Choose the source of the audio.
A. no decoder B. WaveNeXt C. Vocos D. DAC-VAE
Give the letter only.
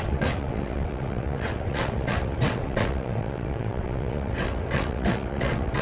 B